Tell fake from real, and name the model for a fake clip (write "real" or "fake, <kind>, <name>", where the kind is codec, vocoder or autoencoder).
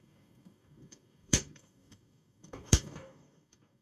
fake, codec, DAC